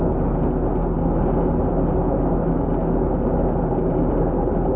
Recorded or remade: recorded